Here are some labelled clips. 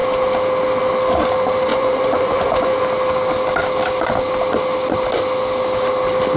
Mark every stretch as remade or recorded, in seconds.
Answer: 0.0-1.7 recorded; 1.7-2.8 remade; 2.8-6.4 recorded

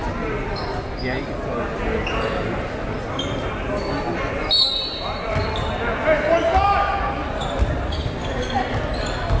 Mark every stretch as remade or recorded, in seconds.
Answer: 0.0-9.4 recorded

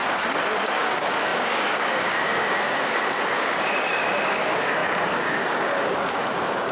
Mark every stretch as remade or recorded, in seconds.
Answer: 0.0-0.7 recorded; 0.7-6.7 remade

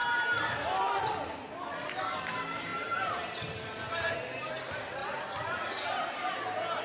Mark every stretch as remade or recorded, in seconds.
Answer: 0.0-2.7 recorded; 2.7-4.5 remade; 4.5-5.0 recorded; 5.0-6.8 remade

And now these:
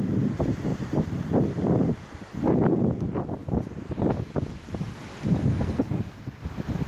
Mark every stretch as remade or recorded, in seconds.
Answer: 0.0-5.4 recorded; 5.4-6.4 remade; 6.4-6.9 recorded